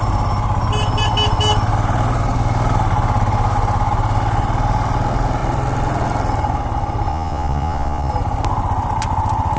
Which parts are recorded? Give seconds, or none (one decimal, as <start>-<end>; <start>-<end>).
0.0-7.1; 8.1-9.6